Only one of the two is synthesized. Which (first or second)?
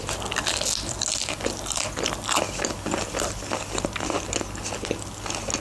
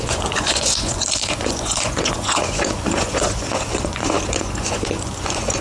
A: second